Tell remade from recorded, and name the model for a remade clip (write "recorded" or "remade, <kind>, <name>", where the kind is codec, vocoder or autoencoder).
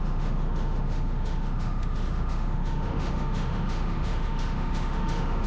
remade, autoencoder, DAC-VAE